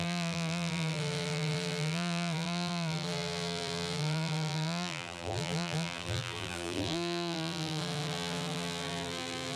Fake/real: fake